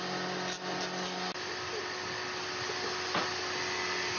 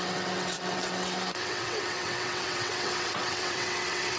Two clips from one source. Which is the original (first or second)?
first